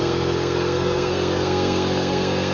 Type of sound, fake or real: fake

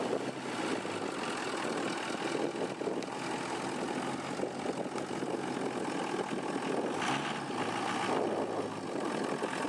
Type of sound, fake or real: real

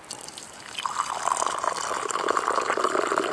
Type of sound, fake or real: real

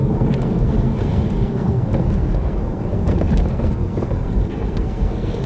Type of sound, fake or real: fake